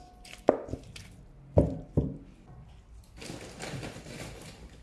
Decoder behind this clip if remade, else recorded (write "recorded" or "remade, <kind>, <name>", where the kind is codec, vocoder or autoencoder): recorded